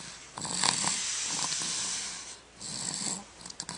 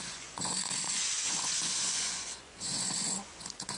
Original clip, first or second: first